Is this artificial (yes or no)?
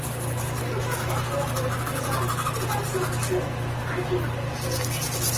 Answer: no